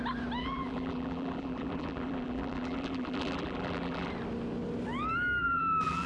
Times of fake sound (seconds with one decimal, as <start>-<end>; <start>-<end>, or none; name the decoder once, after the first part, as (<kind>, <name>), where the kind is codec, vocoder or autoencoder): 0.4-4.1 (vocoder, BigVGAN v2); 5.4-6.1